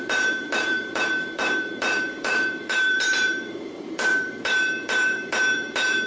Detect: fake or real fake